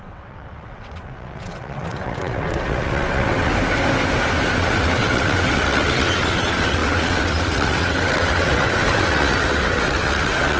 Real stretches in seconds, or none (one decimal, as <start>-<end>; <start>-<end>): 3.5-4.6